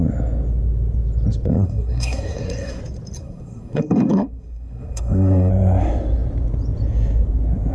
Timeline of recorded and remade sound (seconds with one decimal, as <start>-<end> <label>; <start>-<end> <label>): 0.0-1.5 recorded; 1.5-2.8 remade; 2.8-3.2 recorded; 3.2-5.5 remade; 5.5-7.7 recorded